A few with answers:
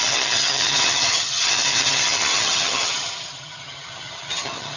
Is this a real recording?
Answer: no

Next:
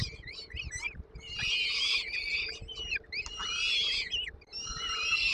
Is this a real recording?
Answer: yes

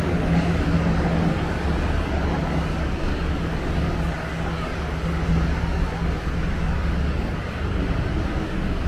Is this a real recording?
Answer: no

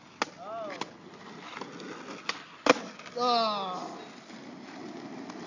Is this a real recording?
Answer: yes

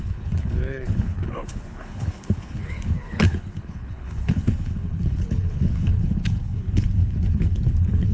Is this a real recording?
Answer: no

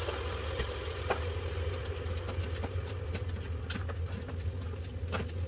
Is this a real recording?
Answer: yes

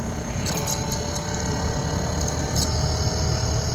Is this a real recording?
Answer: yes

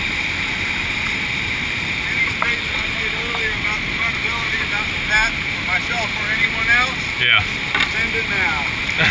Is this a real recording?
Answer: yes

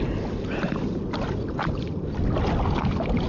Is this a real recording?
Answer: yes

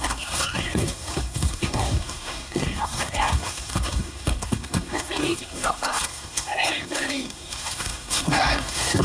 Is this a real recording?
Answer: no